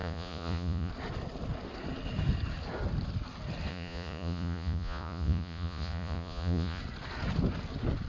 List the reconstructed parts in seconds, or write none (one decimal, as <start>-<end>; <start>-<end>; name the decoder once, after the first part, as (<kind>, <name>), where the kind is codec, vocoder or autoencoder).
0.0-0.9 (vocoder, Vocos); 3.7-6.8